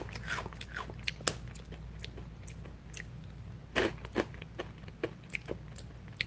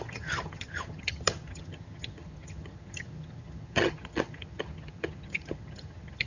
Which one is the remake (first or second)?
second